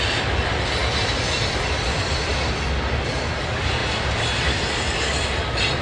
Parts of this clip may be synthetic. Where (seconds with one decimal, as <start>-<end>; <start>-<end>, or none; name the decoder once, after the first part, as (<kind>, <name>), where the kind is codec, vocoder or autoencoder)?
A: none